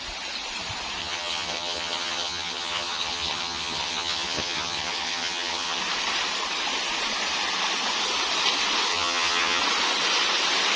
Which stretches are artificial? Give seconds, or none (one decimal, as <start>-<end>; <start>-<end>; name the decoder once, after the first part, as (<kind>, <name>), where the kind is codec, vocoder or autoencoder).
1.0-5.8 (vocoder, HiFi-GAN); 8.9-9.6